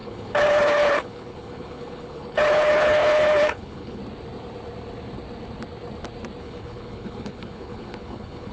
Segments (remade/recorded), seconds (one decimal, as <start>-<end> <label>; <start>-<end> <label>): 0.0-4.0 remade; 4.0-6.4 recorded; 6.4-8.5 remade